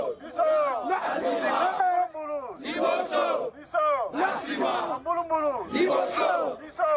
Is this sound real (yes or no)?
yes